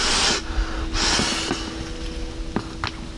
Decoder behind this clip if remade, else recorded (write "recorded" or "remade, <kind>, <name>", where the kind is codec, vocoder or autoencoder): recorded